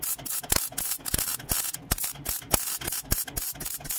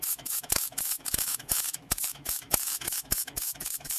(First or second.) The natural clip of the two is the first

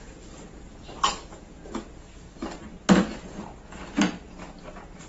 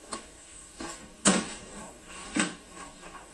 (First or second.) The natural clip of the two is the first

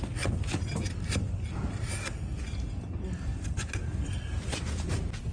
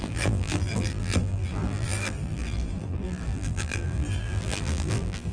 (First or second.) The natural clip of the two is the first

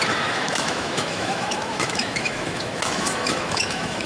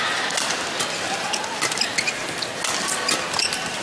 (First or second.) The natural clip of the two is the second